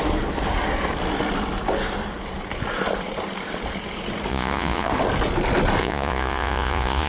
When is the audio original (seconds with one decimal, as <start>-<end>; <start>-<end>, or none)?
0.0-4.3; 4.9-5.8